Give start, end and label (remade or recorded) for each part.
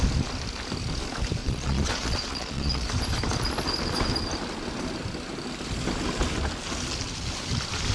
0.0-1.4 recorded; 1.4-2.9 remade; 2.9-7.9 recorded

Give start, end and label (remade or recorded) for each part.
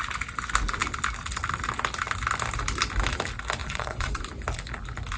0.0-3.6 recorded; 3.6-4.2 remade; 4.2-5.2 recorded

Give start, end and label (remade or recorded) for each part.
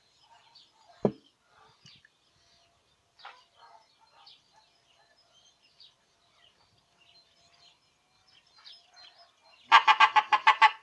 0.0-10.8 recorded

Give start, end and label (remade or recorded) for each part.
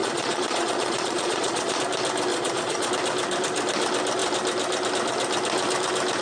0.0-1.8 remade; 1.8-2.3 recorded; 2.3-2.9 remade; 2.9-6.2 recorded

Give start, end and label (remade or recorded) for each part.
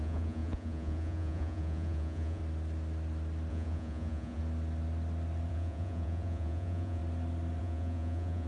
0.0-2.4 remade; 2.4-3.5 recorded; 3.5-4.4 remade; 4.4-5.5 recorded; 5.5-7.0 remade; 7.0-7.6 recorded; 7.6-8.5 remade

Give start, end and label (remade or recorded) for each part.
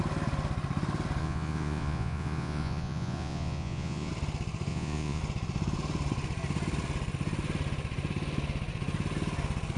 0.0-1.2 recorded; 1.2-4.1 remade; 4.1-4.7 recorded; 4.7-5.2 remade; 5.2-9.8 recorded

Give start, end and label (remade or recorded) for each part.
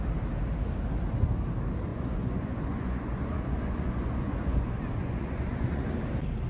0.0-1.9 recorded; 1.9-5.8 remade; 5.8-6.5 recorded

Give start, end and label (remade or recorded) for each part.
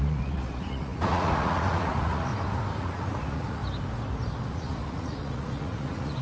0.0-2.3 remade; 2.3-2.8 recorded; 2.8-3.6 remade; 3.6-4.5 recorded; 4.5-6.2 remade